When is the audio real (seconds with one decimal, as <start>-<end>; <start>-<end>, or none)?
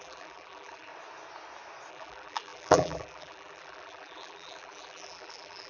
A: 0.9-1.9